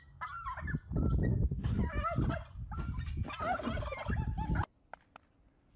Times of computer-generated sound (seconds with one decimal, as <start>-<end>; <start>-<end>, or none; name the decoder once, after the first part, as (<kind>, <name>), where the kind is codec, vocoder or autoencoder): 1.3-1.8 (autoencoder, DAC-VAE)